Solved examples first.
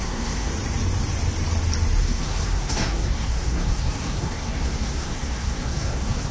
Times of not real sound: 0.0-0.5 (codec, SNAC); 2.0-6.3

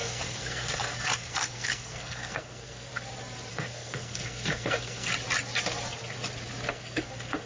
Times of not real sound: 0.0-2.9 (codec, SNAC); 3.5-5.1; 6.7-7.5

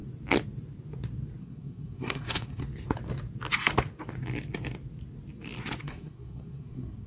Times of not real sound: 1.4-2.6 (codec, SNAC); 5.8-7.1

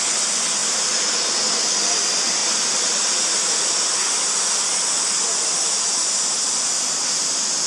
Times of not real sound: none